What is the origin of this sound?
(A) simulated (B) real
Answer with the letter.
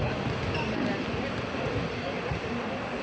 B